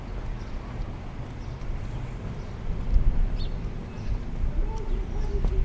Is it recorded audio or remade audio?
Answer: recorded